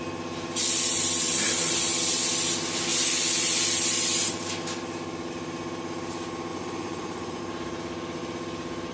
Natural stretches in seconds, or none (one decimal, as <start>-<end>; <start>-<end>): 0.0-6.5; 7.4-8.9